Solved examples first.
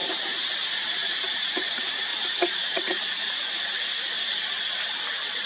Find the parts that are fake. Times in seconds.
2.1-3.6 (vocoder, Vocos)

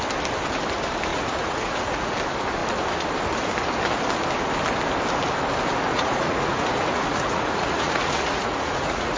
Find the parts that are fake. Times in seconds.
1.1-2.1 (vocoder, Vocos); 5.9-9.2

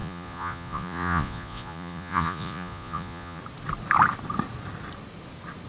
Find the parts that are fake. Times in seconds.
0.0-3.4 (vocoder, Vocos)

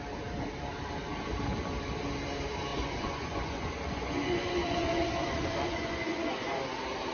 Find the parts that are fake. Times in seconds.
2.7-6.6 (vocoder, Vocos)

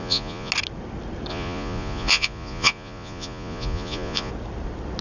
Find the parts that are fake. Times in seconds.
0.0-0.5 (vocoder, Vocos); 1.3-4.3

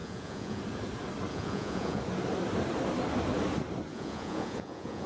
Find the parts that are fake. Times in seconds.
0.0-0.6 (vocoder, Vocos); 1.3-2.0; 3.9-5.1

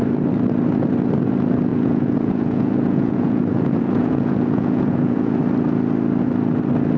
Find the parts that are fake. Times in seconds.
1.7-5.4 (vocoder, Vocos)

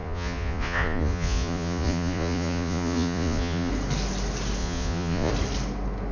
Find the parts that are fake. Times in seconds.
0.0-3.7 (vocoder, Vocos); 4.6-5.3